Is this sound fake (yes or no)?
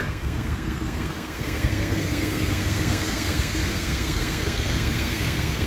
yes